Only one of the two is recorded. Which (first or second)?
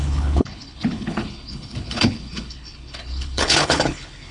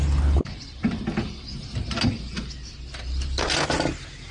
second